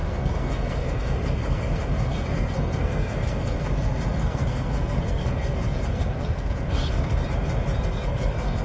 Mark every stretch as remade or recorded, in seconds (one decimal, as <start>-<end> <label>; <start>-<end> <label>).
0.0-7.2 remade; 7.2-7.8 recorded; 7.8-8.6 remade